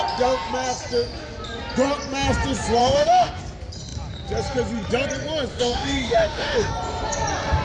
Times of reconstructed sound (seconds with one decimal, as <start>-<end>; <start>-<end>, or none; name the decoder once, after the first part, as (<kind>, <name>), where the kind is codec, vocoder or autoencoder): 2.8-3.4 (autoencoder, DAC-VAE); 5.5-6.7